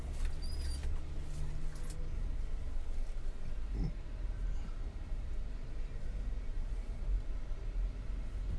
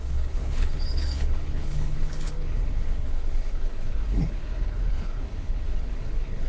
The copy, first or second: second